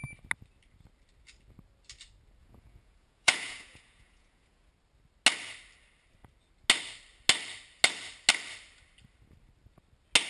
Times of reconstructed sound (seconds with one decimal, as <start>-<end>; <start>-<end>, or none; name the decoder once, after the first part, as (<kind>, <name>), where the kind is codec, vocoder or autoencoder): 2.4-4.7 (vocoder, Vocos)